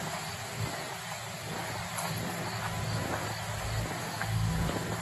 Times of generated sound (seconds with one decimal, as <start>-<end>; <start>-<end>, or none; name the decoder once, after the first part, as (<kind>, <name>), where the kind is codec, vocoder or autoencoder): 4.0-4.5 (autoencoder, DAC-VAE)

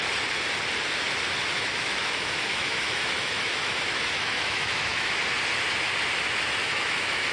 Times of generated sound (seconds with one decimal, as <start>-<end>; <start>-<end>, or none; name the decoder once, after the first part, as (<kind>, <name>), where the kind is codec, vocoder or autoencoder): 1.4-5.2 (autoencoder, DAC-VAE); 6.6-7.3

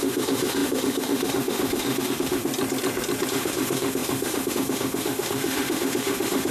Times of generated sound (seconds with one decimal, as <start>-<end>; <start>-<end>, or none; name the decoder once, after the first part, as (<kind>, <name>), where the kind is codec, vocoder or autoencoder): 0.0-2.5 (autoencoder, DAC-VAE); 3.3-6.5

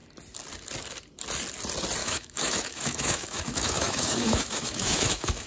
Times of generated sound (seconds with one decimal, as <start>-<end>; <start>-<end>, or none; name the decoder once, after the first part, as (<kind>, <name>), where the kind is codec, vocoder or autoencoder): 2.0-5.5 (autoencoder, DAC-VAE)